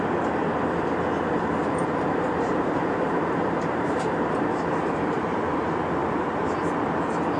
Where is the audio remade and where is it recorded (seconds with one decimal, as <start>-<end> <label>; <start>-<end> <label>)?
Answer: 0.0-1.8 recorded; 1.8-5.4 remade; 5.4-6.0 recorded; 6.0-6.5 remade; 6.5-7.4 recorded